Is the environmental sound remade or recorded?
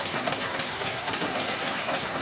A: remade